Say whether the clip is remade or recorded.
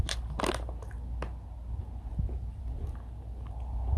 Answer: recorded